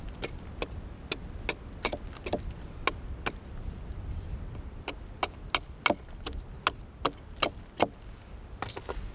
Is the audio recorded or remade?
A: recorded